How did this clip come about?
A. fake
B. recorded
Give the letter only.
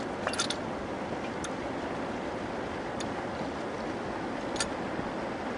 B